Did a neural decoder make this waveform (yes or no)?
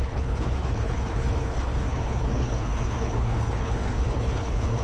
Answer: yes